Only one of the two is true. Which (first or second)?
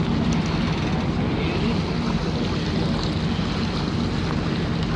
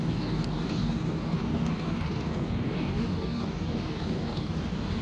first